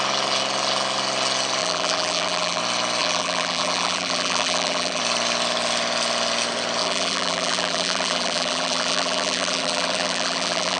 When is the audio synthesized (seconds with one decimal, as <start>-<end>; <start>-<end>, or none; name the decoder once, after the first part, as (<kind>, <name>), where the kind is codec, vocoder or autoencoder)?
1.6-2.6 (vocoder, BigVGAN v2); 3.0-5.0; 6.8-10.8